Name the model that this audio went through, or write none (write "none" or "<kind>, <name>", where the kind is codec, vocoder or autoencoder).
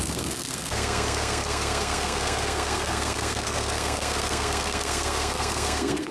codec, SNAC